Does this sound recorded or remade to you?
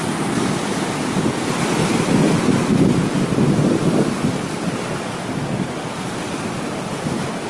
recorded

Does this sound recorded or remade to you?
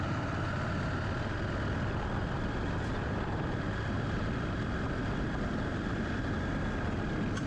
recorded